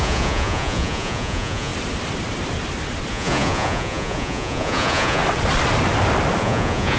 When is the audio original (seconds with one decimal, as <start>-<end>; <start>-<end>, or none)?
1.7-3.1; 5.2-6.4